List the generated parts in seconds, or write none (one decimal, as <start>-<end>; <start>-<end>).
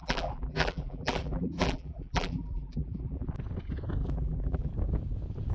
0.0-3.3; 4.0-4.7